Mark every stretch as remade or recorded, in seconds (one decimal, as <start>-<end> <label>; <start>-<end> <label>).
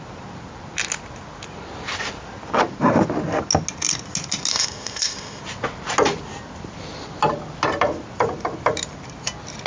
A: 0.0-4.5 recorded; 4.5-5.4 remade; 5.4-9.7 recorded